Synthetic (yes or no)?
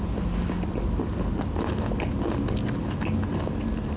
no